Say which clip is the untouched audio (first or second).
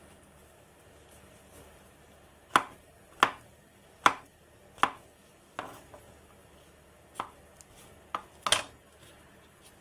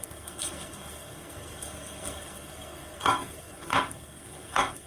first